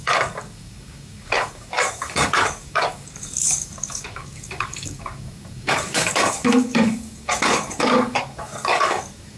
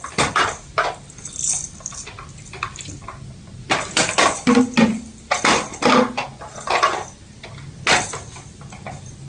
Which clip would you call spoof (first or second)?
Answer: first